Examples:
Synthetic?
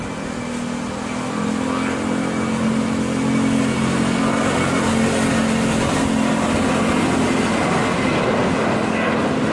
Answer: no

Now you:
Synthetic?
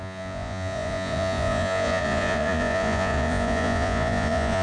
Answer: yes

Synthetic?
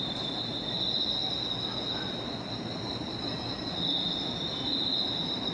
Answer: no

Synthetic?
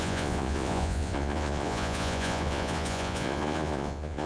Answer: yes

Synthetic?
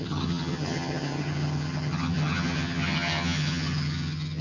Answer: yes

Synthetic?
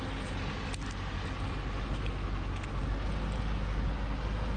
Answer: no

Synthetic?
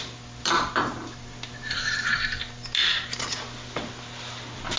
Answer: no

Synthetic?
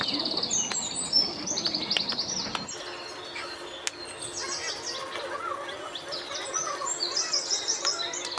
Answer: no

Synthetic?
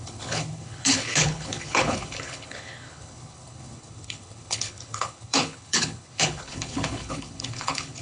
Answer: yes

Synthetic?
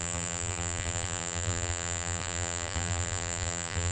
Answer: yes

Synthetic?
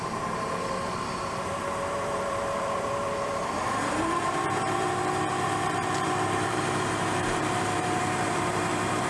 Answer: yes